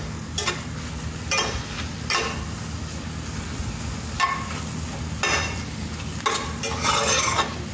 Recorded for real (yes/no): yes